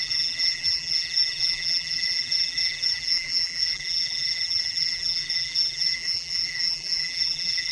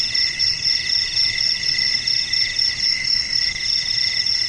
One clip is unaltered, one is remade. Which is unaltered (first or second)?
second